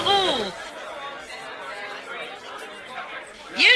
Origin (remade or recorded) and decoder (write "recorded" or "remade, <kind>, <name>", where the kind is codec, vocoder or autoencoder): recorded